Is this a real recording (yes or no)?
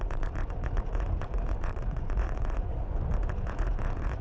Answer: no